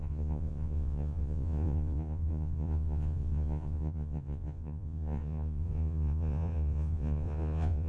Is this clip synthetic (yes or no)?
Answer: yes